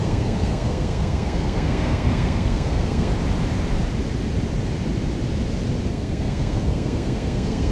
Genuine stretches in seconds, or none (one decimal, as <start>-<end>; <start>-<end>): 3.1-5.9